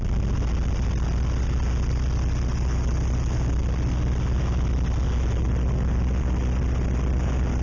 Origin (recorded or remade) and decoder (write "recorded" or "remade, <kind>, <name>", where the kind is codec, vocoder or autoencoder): recorded